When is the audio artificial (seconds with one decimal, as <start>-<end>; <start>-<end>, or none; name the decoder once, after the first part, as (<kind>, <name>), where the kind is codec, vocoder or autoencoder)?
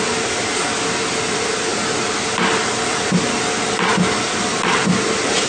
none